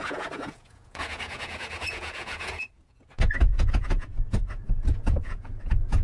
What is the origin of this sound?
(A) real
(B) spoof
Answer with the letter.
B